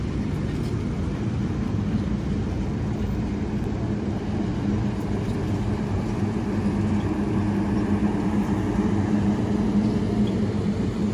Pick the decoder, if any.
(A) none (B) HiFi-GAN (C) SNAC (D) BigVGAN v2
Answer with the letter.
A